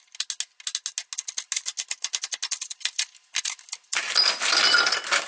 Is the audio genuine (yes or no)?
yes